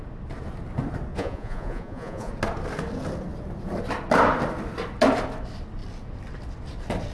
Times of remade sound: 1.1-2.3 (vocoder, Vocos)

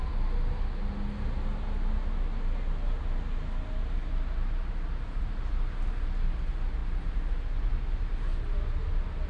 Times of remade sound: none